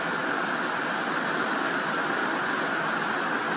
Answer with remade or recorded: recorded